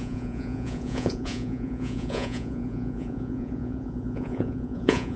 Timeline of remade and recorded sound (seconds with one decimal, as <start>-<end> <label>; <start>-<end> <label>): 0.0-5.2 remade